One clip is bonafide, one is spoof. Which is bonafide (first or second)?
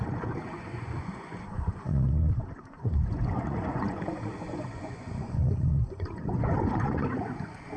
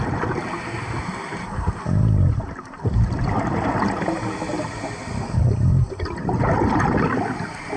second